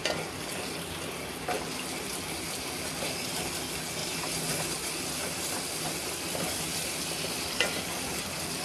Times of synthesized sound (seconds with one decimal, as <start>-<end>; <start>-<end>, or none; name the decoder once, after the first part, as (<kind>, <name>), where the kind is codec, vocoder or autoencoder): 4.0-7.8 (vocoder, BigVGAN v2)